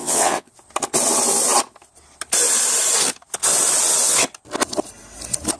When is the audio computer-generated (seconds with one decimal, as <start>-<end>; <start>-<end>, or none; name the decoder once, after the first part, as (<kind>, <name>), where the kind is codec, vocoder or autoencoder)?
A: 0.0-0.5 (vocoder, WaveNeXt)